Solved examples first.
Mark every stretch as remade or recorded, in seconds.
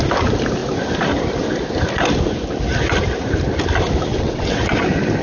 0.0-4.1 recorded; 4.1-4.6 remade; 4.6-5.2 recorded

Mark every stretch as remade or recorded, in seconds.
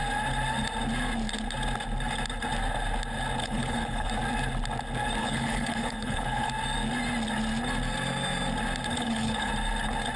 0.0-3.4 recorded; 3.4-4.1 remade; 4.1-5.2 recorded; 5.2-6.5 remade; 6.5-8.9 recorded; 8.9-9.5 remade; 9.5-10.2 recorded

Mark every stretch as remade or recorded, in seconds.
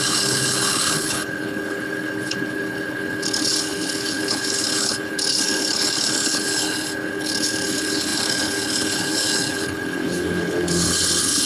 0.0-11.5 remade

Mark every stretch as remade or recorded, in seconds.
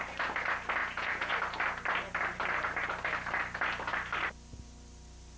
0.0-0.8 recorded; 0.8-1.3 remade; 1.3-5.4 recorded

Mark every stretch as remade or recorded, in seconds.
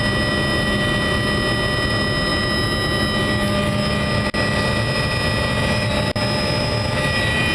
0.0-7.5 recorded